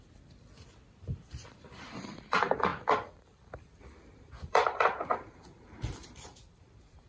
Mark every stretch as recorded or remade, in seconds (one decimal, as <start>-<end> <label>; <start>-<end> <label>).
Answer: 0.0-7.1 remade